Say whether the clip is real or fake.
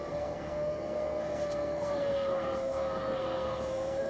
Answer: fake